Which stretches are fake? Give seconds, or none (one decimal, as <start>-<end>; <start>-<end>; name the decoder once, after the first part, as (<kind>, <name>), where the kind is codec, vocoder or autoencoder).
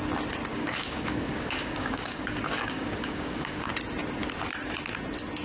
0.5-3.7 (codec, DAC)